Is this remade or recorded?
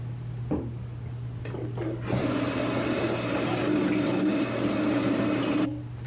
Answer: recorded